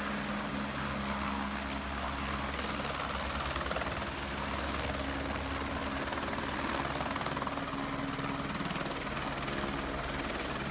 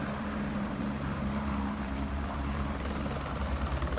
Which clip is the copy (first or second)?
second